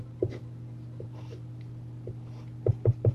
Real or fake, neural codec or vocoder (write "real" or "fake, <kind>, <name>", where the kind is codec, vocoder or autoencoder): real